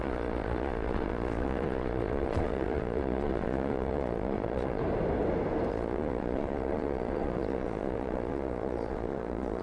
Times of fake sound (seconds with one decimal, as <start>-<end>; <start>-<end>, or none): 0.0-4.8; 5.7-9.6